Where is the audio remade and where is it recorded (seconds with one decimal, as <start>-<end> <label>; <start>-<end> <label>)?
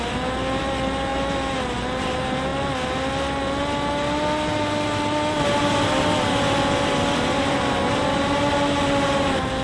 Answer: 0.0-9.6 recorded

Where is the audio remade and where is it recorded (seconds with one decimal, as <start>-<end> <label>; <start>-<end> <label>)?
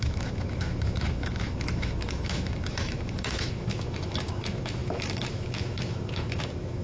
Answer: 0.0-6.8 remade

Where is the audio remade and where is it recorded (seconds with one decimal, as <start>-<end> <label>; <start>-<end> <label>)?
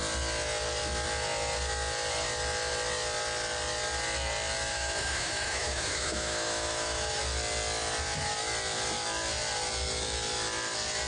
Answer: 0.0-4.7 recorded; 4.7-7.2 remade; 7.2-11.1 recorded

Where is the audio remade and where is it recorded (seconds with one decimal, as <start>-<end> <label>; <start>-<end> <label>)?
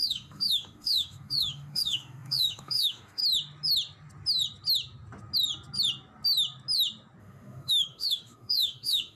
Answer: 0.0-3.2 remade; 3.2-7.2 recorded; 7.2-9.2 remade